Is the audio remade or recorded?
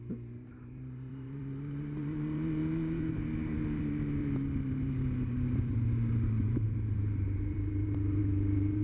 remade